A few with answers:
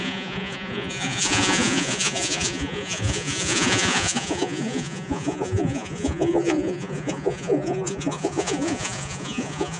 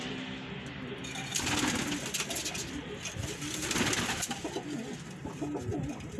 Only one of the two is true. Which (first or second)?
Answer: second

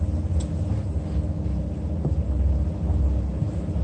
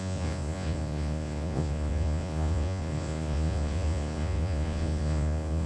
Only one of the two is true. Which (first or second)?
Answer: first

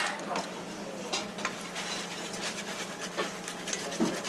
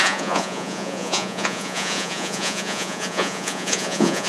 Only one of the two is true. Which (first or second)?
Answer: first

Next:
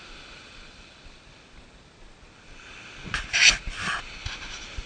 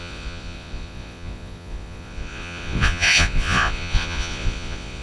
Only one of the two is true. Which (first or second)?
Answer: first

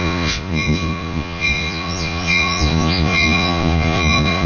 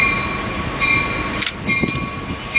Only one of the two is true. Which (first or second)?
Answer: second